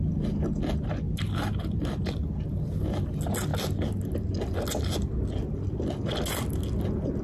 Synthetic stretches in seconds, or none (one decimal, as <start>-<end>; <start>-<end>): none